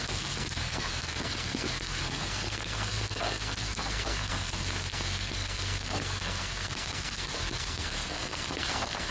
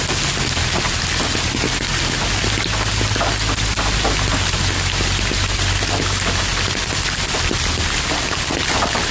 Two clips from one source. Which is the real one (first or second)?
second